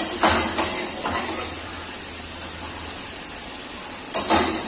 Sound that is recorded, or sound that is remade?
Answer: recorded